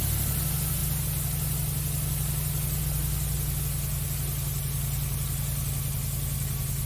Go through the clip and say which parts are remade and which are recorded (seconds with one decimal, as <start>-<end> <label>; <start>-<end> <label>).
0.0-6.8 recorded